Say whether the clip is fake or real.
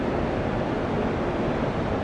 real